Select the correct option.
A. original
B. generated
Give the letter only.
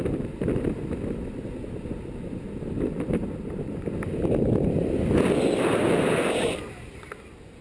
B